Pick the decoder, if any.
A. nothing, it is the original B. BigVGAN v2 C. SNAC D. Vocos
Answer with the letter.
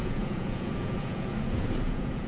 D